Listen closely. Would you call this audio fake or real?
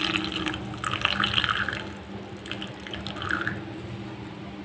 real